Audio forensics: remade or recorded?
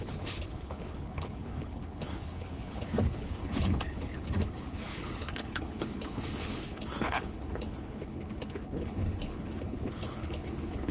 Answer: remade